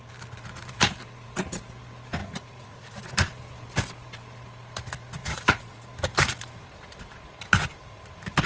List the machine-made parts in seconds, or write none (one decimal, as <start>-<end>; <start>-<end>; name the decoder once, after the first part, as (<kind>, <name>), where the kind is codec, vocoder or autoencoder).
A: 2.2-3.1 (vocoder, Vocos); 5.2-5.9